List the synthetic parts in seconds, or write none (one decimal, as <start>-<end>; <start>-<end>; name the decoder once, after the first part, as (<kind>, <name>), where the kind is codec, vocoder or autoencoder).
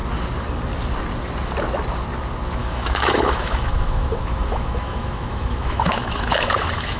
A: 2.6-7.0 (autoencoder, DAC-VAE)